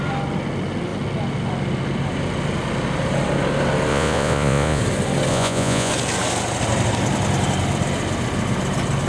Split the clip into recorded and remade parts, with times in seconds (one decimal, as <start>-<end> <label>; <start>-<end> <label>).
0.0-3.9 recorded; 3.9-4.8 remade; 4.8-5.3 recorded; 5.3-5.9 remade; 5.9-9.1 recorded